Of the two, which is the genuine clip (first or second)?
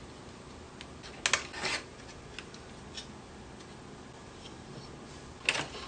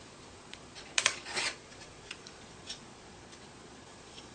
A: first